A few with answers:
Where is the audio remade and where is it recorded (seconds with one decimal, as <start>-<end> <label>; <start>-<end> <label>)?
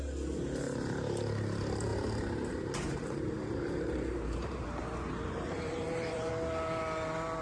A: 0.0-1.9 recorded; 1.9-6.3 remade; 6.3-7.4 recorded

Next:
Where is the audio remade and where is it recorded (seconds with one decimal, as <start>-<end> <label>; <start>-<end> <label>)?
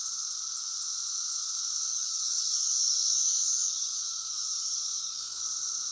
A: 0.0-1.9 recorded; 1.9-5.4 remade; 5.4-5.9 recorded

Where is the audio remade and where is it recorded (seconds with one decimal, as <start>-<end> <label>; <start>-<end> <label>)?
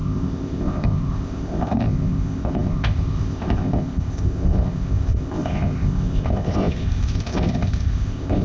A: 0.0-8.4 remade